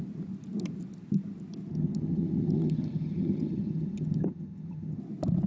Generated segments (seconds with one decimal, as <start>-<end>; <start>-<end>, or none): 1.7-5.0